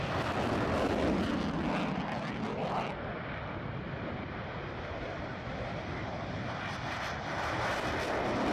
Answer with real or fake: real